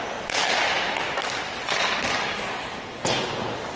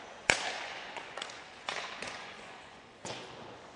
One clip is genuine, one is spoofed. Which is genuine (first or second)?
first